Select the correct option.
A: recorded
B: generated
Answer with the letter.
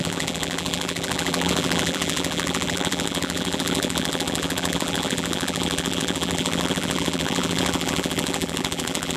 B